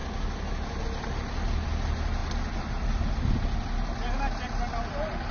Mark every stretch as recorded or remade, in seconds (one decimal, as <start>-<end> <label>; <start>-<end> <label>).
0.0-5.3 recorded